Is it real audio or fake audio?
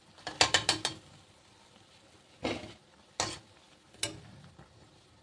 real